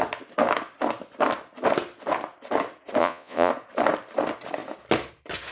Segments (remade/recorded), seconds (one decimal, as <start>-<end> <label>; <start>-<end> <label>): 0.0-3.0 recorded; 3.0-3.5 remade; 3.5-5.5 recorded